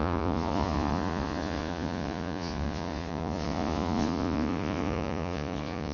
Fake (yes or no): yes